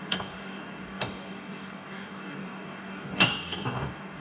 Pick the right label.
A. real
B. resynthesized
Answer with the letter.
B